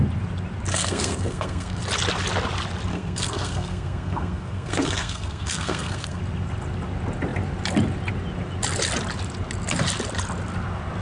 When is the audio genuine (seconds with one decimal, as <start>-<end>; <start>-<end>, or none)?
0.0-0.7; 1.8-2.9; 6.2-11.0